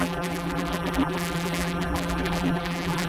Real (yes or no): no